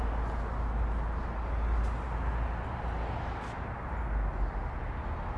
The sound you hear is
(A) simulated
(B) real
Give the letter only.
B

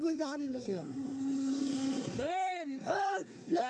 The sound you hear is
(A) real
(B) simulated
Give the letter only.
B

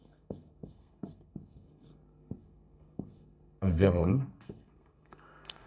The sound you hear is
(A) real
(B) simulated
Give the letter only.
B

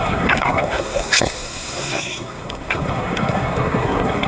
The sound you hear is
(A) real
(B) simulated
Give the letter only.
B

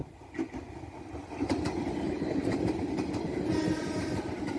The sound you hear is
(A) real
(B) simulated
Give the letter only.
A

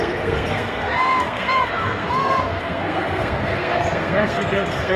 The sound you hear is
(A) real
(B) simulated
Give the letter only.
B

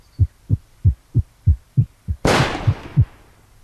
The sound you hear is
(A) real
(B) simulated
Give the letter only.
A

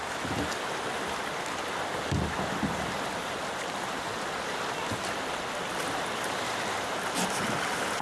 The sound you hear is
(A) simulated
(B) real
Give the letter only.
B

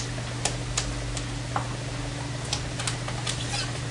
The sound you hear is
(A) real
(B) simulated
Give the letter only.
A